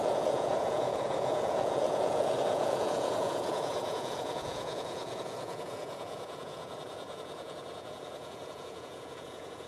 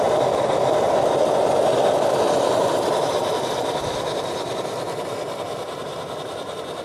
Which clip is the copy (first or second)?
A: first